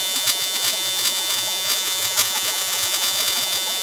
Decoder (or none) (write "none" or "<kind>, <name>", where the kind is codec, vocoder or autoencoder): vocoder, Vocos